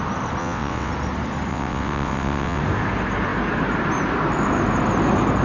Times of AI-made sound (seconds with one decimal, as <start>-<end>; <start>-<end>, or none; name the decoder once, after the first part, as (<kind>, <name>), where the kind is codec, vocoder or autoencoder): 0.4-0.9 (vocoder, WaveNeXt); 1.5-2.6